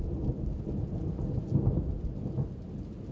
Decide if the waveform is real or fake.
real